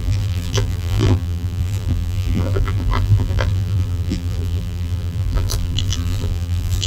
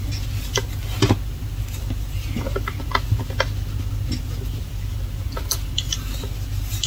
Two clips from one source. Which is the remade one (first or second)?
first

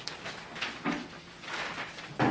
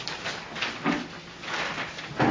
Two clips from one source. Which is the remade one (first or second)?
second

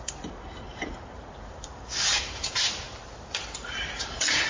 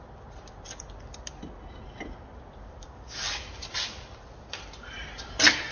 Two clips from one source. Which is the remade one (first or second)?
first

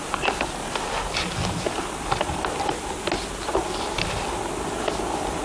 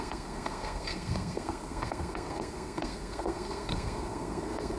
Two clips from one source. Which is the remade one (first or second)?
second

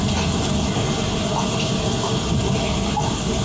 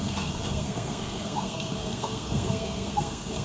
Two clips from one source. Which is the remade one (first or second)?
second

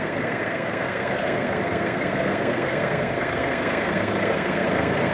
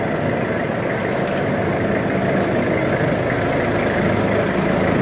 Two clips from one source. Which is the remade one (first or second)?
first